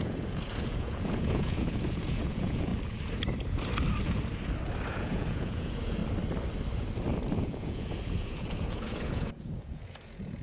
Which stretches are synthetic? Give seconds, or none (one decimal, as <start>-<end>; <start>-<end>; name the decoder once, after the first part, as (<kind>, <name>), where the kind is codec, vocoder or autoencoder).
0.0-2.7 (vocoder, Vocos); 4.9-6.0; 7.4-10.4